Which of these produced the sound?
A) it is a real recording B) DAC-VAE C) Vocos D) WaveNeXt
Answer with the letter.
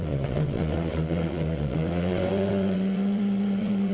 D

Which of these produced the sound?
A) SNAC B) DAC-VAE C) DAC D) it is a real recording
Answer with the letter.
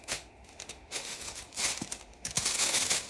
B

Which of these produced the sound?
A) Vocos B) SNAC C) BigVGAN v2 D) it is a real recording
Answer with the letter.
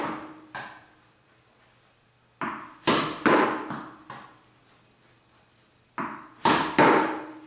D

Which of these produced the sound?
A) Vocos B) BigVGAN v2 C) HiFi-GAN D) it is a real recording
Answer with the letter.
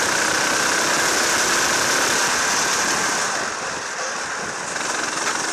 D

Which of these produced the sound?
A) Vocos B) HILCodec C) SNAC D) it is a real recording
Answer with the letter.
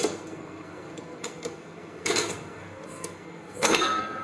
C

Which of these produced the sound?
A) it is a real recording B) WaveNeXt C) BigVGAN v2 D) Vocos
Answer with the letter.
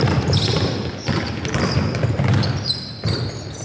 A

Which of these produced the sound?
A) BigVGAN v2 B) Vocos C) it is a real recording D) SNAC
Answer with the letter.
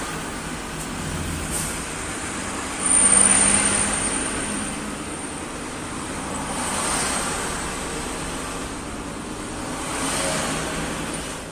C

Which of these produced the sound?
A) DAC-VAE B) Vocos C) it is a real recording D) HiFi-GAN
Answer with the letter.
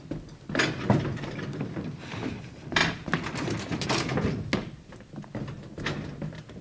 C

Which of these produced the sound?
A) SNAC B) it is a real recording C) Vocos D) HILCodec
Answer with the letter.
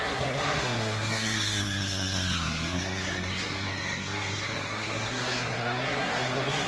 A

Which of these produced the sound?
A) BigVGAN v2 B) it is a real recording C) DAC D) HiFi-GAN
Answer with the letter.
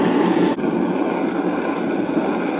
B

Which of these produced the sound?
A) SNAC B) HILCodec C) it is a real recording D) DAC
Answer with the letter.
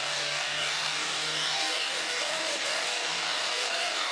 D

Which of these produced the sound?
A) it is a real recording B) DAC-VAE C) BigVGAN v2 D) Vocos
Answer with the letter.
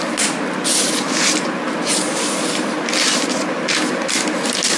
A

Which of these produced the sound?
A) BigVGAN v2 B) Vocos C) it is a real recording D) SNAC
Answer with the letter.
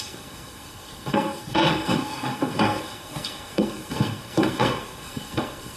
D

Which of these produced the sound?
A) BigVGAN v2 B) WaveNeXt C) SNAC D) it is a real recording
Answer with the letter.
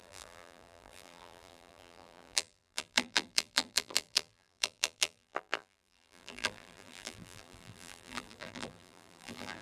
A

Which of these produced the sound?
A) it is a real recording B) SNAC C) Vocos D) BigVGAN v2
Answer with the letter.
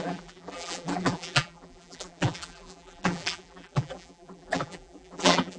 D